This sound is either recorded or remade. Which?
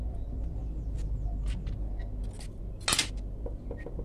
recorded